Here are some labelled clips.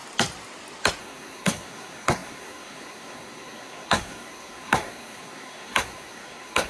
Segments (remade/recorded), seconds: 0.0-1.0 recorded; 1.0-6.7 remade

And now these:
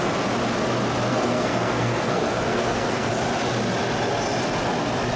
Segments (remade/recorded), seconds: 0.0-1.1 recorded; 1.1-3.1 remade; 3.1-5.2 recorded